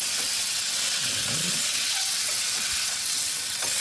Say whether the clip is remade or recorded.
remade